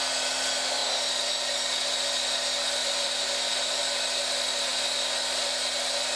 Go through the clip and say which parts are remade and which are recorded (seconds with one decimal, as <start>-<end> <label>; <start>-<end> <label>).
0.0-2.8 recorded; 2.8-3.8 remade; 3.8-6.2 recorded